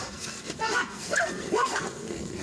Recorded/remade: remade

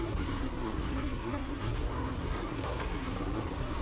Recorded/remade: remade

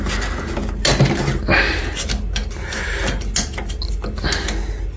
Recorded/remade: recorded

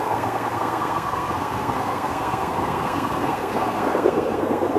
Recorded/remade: remade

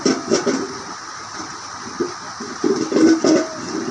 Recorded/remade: recorded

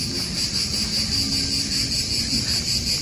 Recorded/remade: recorded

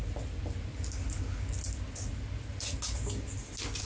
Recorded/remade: recorded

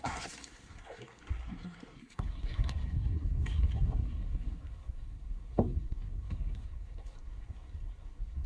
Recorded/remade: remade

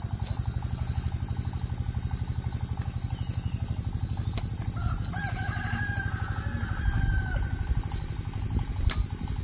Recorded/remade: recorded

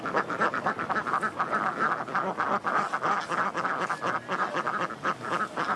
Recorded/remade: recorded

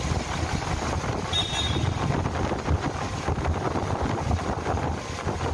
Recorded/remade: recorded